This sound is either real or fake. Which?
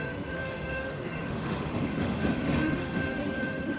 fake